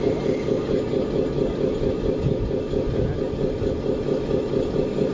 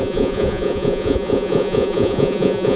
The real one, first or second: first